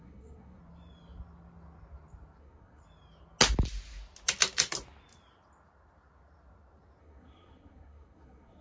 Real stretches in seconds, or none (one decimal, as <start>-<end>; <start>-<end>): 0.6-2.4; 2.8-7.0